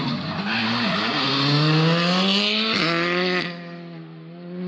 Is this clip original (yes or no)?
yes